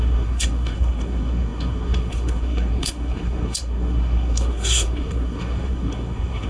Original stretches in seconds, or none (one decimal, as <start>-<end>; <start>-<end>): none